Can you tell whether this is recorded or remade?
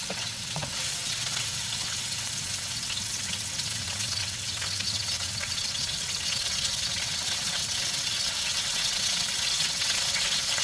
remade